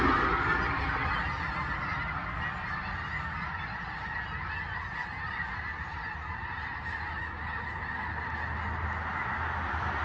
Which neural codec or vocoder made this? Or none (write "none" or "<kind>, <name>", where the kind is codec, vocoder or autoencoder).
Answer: none